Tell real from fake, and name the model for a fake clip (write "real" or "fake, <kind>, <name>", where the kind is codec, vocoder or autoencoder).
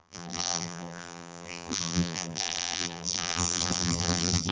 fake, vocoder, BigVGAN v2